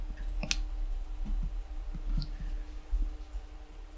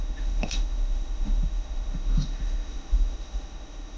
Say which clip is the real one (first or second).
first